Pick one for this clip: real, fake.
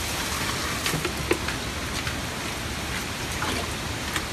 real